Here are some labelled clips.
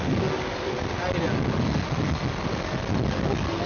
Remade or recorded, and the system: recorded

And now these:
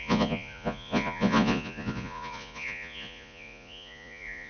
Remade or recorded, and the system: remade, vocoder, Vocos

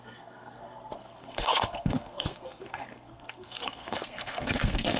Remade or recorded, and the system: remade, codec, SNAC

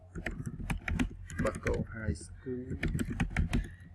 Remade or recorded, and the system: recorded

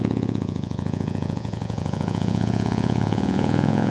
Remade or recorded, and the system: remade, vocoder, Vocos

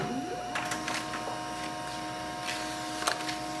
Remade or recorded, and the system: recorded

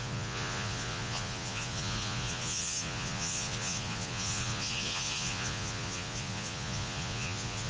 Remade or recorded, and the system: remade, vocoder, Vocos